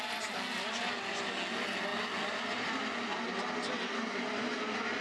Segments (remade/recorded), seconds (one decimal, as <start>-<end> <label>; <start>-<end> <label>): 0.0-5.0 recorded